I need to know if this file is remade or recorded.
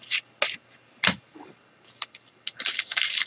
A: recorded